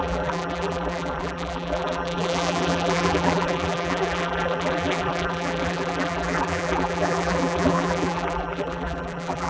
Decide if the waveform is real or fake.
fake